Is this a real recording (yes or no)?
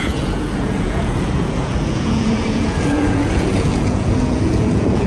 no